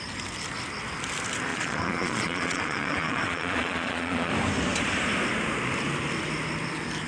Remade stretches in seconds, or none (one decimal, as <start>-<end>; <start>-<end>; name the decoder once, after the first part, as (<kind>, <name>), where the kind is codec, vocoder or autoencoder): 1.5-4.3 (vocoder, Vocos)